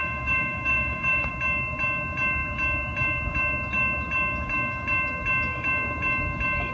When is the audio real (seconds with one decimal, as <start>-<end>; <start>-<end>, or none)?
1.3-6.7